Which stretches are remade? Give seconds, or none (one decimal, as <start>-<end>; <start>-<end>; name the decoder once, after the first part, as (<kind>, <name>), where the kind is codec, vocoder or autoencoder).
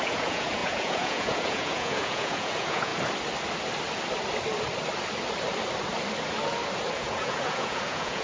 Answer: 0.0-2.9 (vocoder, Vocos); 6.9-8.2